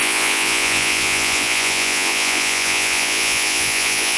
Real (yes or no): no